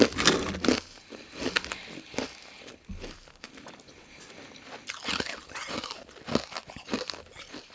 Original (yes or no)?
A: yes